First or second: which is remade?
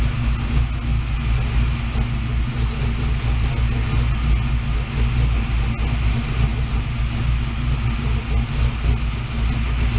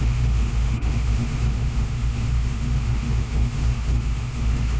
second